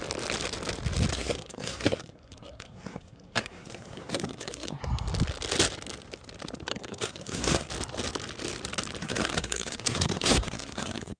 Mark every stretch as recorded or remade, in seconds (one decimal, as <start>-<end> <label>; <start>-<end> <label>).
0.0-1.1 recorded; 1.1-4.8 remade; 4.8-6.7 recorded; 6.7-7.7 remade; 7.7-9.0 recorded; 9.0-11.2 remade